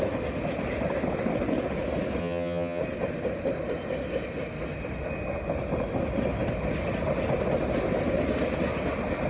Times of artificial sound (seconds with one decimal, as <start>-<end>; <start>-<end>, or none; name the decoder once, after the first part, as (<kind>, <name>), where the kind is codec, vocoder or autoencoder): 2.2-2.8 (vocoder, HiFi-GAN)